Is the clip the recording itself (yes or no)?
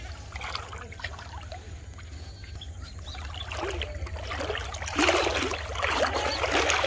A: yes